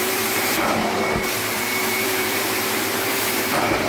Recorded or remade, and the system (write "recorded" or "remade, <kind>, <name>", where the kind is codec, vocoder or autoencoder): remade, vocoder, BigVGAN v2